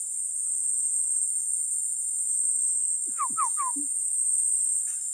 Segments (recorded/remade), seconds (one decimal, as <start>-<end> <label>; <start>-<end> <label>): 0.0-5.1 recorded